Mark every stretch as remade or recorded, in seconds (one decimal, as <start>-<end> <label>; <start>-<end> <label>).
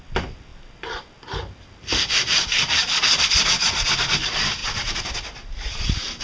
0.0-6.2 recorded